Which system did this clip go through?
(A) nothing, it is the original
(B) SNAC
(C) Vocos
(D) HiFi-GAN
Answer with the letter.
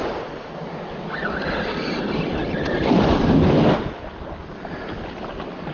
A